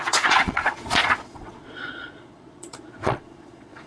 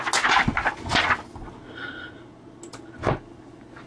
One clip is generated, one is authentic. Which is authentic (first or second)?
second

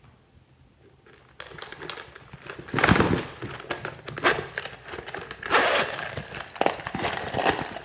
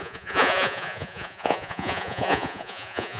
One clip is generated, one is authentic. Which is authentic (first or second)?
first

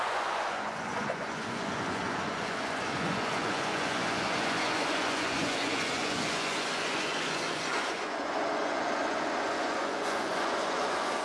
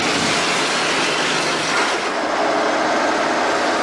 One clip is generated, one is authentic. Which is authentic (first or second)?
second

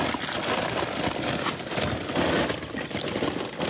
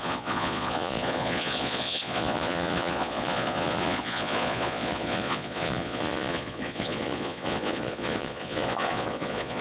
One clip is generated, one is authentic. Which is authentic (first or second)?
first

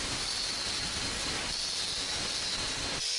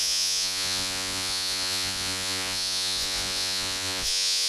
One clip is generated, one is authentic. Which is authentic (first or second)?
first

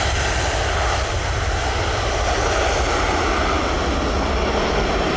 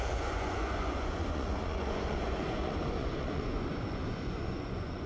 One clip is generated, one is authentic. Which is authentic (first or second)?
first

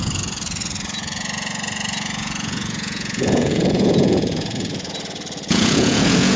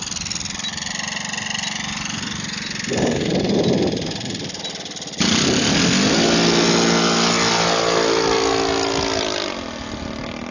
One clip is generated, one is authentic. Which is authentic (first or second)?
second